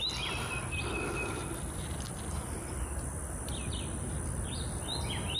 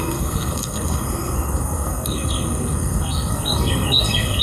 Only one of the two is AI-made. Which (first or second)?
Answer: second